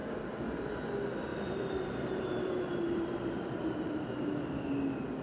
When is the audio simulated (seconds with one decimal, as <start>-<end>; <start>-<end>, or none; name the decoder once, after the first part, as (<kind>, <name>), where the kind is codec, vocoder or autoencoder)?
0.0-0.7 (vocoder, BigVGAN v2); 1.3-4.2